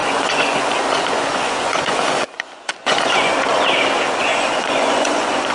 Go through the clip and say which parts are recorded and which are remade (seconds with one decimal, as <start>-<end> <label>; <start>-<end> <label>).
0.0-3.5 remade; 3.5-4.2 recorded; 4.2-5.5 remade